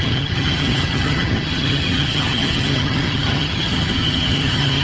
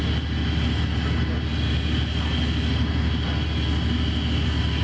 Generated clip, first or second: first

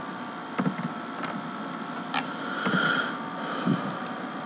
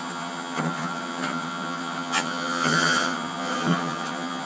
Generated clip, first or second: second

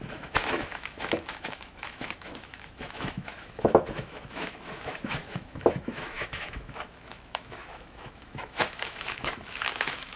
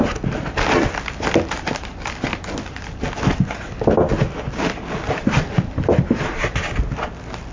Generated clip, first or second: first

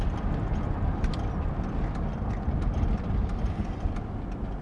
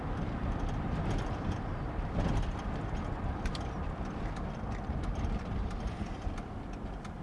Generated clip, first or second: second